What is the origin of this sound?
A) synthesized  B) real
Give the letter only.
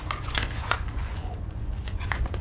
A